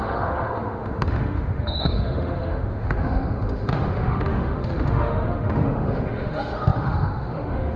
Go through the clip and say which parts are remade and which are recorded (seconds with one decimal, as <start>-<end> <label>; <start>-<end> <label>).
0.0-7.8 remade